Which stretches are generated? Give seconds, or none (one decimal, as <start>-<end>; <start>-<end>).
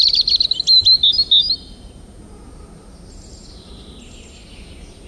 none